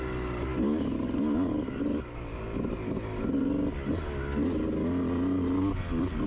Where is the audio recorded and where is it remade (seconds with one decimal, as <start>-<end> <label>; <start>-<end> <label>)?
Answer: 0.0-6.3 recorded

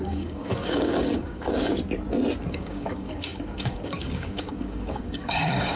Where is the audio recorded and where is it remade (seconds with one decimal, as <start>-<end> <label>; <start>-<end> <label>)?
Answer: 0.0-1.7 remade; 1.7-2.5 recorded; 2.5-5.8 remade